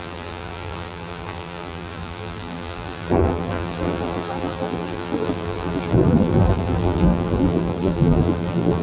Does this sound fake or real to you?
fake